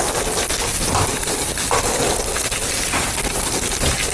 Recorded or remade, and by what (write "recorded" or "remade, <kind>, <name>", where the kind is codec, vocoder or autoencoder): recorded